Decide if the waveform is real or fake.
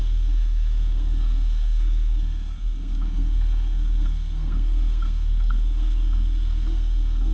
fake